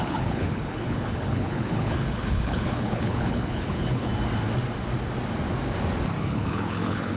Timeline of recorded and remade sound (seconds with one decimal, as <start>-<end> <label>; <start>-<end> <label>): 0.0-4.1 remade; 4.1-6.2 recorded; 6.2-7.2 remade